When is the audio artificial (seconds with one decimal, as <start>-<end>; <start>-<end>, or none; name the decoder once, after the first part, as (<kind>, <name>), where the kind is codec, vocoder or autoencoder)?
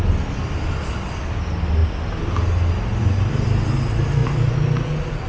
none